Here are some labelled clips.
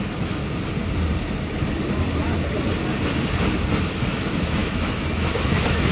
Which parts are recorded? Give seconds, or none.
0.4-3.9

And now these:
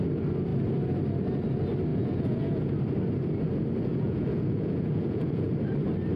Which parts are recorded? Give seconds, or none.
0.0-1.9; 2.6-3.9; 5.5-6.2

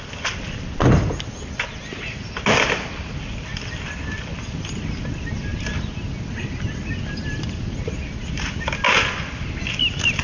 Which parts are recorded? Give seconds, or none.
0.0-10.2

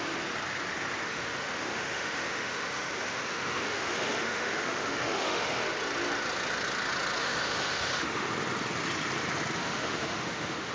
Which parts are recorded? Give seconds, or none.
0.0-1.1; 5.6-7.2; 8.3-9.6

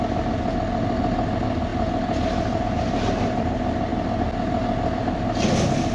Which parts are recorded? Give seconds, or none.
0.0-5.9

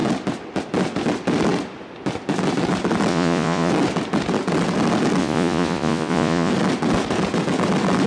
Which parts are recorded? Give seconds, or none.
0.0-3.1; 3.7-5.2; 6.5-8.1